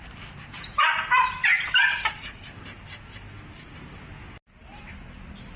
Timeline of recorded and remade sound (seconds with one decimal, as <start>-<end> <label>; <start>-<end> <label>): 0.0-5.6 recorded